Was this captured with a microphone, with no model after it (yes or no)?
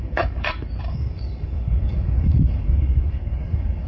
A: no